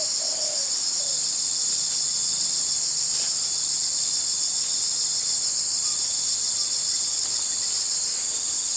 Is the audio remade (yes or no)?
no